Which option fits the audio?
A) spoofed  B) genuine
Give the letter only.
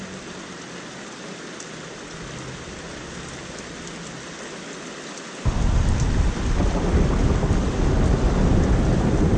B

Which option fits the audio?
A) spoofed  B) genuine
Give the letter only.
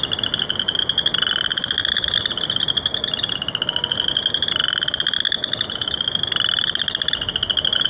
B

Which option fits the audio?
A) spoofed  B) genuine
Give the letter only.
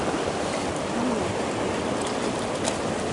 B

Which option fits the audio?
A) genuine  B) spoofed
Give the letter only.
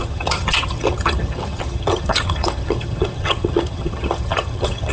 B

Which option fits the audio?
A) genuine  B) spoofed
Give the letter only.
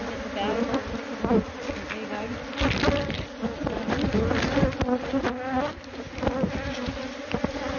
A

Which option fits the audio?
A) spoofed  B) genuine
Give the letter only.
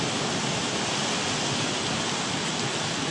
B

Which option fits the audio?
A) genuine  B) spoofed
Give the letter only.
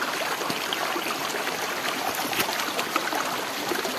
A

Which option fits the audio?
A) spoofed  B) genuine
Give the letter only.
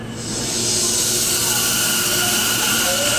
B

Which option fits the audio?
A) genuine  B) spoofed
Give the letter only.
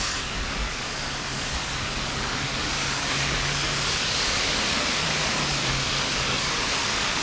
B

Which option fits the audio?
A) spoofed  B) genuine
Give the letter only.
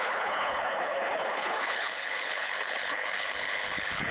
A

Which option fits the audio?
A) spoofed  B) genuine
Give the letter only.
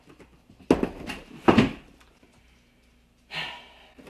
B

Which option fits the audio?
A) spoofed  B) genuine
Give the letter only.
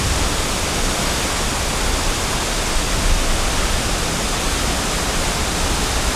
B